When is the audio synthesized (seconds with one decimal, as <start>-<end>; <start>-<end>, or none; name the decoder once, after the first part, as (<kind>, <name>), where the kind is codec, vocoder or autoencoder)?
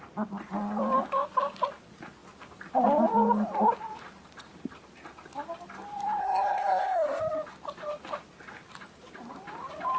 6.2-7.2 (codec, SNAC)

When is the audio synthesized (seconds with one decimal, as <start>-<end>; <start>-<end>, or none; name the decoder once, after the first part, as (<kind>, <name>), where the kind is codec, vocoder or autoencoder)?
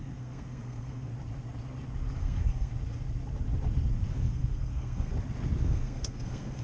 0.0-1.1 (codec, SNAC); 2.2-2.7; 4.1-5.1; 5.6-6.6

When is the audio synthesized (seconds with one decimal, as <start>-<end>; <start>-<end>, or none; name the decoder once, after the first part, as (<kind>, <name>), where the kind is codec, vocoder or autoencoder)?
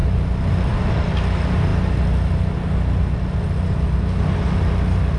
none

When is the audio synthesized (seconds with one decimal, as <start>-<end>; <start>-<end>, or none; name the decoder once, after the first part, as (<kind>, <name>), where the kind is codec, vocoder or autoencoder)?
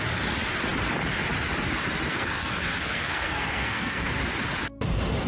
2.1-4.1 (codec, SNAC)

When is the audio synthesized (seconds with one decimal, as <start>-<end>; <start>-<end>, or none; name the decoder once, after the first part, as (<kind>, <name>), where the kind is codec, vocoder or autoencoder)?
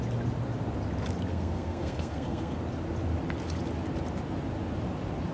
1.3-2.6 (codec, SNAC)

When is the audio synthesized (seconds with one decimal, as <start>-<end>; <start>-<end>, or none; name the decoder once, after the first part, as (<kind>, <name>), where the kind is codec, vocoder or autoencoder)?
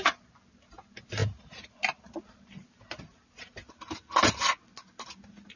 none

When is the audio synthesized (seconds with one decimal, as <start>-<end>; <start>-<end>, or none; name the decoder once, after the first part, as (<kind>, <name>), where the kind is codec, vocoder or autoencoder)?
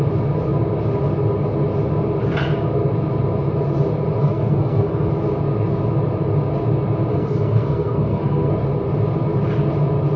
4.2-5.1 (codec, SNAC); 7.1-8.5